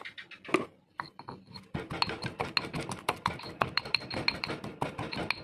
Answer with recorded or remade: recorded